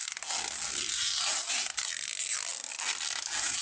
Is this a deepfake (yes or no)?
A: no